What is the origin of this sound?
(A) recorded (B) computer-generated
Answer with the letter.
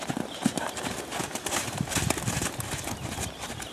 A